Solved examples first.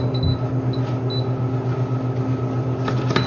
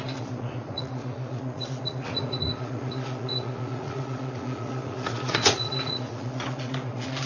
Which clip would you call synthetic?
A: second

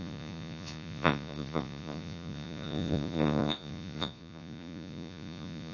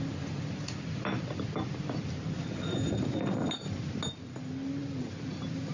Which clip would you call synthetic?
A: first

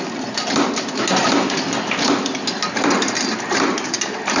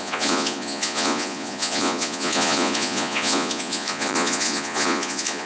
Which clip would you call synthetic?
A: second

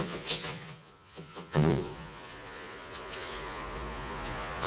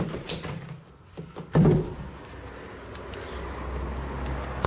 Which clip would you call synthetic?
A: first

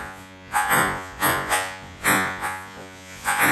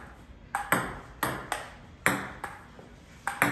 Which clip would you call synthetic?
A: first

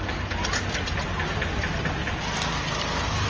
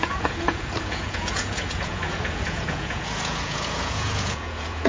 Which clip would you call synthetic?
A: second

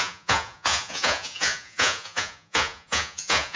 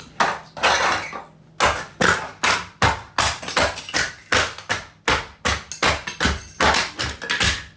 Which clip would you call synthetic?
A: first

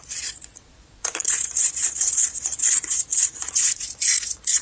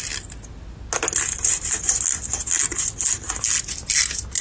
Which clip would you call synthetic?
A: first